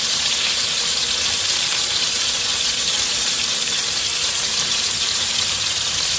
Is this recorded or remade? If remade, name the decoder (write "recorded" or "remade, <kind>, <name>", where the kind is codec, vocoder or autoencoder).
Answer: remade, vocoder, BigVGAN v2